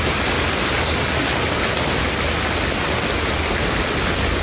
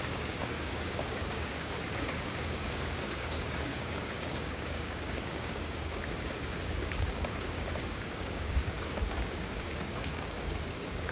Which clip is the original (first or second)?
first